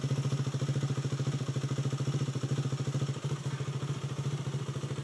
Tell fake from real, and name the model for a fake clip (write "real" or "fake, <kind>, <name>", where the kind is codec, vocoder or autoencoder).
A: real